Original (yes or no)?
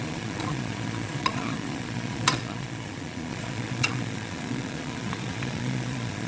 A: no